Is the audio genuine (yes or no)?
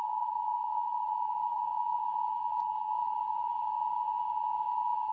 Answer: no